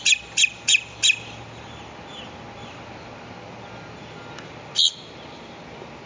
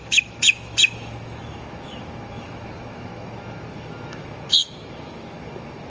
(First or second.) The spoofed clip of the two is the second